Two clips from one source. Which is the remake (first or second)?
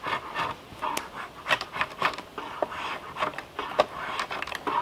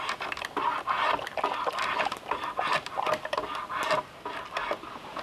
first